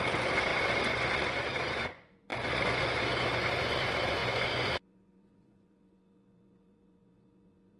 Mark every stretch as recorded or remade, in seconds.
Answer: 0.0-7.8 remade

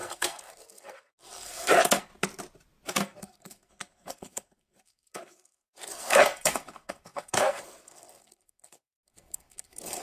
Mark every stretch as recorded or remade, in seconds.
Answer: 0.0-2.1 remade; 2.1-2.9 recorded; 2.9-10.0 remade